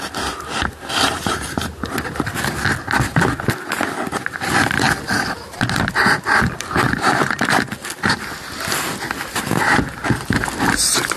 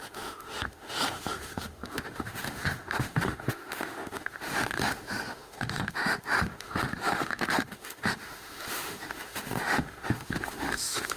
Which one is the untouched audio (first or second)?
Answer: first